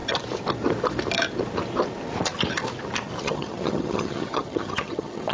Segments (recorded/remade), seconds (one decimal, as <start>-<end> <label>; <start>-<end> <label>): 0.0-3.2 recorded; 3.2-5.3 remade